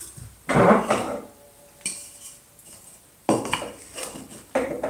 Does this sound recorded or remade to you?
recorded